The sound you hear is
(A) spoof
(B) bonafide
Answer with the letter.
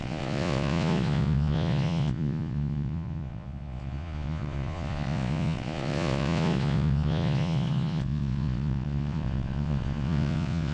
A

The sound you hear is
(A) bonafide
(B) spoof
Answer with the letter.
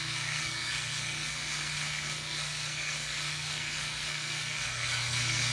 B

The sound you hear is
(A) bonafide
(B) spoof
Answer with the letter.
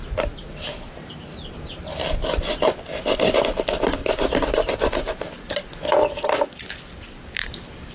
A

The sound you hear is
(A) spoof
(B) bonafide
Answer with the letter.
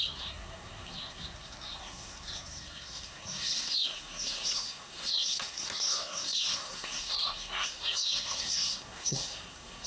A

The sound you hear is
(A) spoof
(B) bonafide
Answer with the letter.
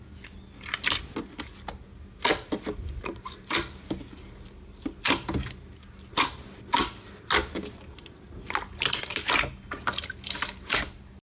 B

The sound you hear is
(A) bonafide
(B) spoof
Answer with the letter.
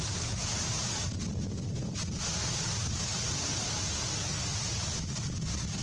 A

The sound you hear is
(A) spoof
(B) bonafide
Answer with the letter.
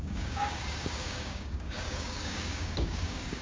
A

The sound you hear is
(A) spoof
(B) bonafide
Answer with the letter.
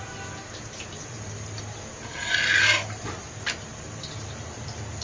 B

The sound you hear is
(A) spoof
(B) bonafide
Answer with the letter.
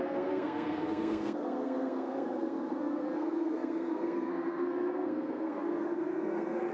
A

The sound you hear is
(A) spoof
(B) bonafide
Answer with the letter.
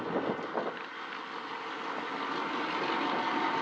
B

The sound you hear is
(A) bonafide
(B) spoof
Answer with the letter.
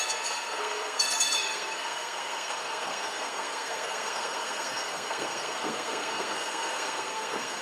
B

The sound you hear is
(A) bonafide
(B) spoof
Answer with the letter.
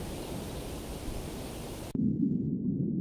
A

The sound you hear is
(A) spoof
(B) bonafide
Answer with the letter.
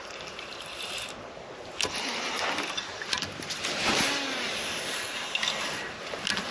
B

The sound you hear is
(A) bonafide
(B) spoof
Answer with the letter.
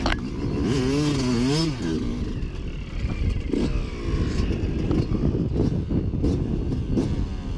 A